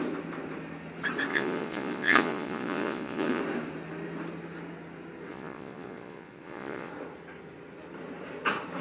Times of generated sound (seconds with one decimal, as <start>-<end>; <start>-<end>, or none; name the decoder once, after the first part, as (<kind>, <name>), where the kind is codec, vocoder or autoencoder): 1.3-3.4 (vocoder, Vocos); 5.3-6.9